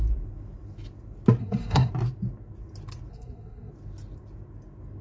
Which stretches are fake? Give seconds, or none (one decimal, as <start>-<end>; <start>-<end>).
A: 1.4-1.9; 3.1-3.7